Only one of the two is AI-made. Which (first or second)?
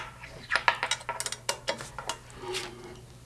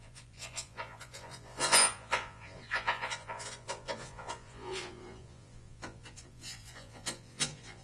second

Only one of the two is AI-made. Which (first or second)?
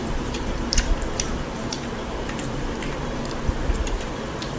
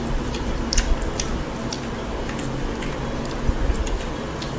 first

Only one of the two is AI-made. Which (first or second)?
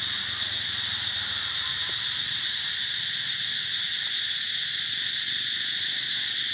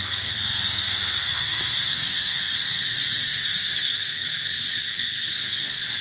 second